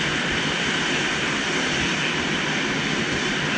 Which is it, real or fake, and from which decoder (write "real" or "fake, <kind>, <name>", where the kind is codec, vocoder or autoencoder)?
real